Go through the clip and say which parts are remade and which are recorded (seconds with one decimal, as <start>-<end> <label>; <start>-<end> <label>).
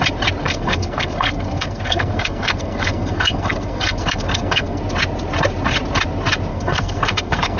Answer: 0.0-0.4 recorded; 0.4-4.8 remade; 4.8-6.5 recorded; 6.5-7.6 remade